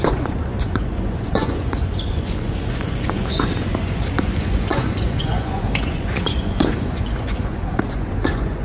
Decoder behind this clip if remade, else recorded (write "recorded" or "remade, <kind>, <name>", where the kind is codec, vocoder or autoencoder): remade, vocoder, Vocos